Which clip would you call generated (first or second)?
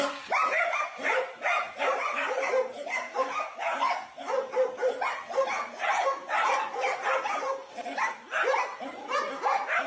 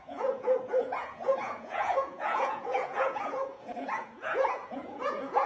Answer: second